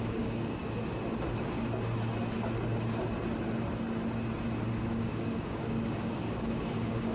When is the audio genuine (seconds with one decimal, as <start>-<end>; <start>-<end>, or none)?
0.6-4.9